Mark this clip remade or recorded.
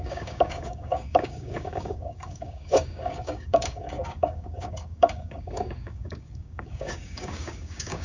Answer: remade